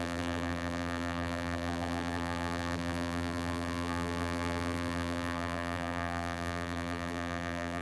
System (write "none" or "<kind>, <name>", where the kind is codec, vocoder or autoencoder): vocoder, BigVGAN v2